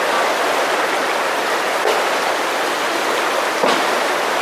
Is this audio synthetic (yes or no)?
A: no